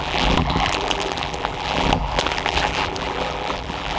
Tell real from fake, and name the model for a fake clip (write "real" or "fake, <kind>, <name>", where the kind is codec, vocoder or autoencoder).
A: fake, vocoder, BigVGAN v2